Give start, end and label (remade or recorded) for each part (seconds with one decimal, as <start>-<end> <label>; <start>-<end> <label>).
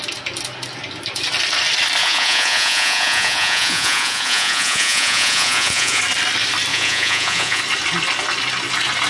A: 0.0-2.0 recorded; 2.0-6.0 remade; 6.0-6.7 recorded; 6.7-7.6 remade; 7.6-9.1 recorded